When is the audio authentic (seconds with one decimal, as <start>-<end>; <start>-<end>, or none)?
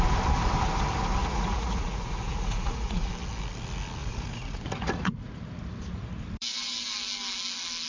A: 0.0-1.2; 3.1-4.0; 5.3-7.9